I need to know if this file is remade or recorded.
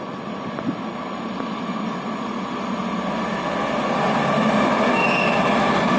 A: recorded